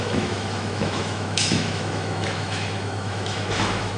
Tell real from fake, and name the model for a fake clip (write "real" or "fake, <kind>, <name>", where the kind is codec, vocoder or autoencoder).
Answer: fake, autoencoder, DAC-VAE